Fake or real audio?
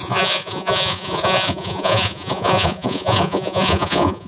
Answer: fake